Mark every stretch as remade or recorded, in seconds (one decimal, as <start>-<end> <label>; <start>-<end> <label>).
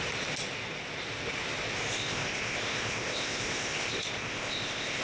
0.0-1.9 recorded; 1.9-5.0 remade